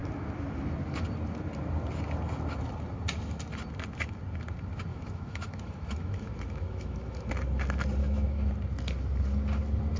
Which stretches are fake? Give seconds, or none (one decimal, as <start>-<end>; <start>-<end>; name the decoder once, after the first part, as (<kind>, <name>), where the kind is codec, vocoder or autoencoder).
4.9-7.3 (autoencoder, DAC-VAE); 8.0-8.5